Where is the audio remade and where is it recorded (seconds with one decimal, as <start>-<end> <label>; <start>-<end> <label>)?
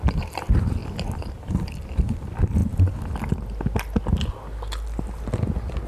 0.0-5.9 recorded